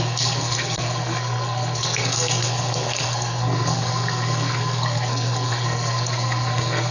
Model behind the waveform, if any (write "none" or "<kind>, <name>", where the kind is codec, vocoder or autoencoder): codec, SNAC